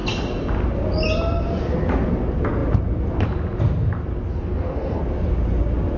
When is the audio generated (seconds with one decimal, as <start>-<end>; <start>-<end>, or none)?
4.3-5.0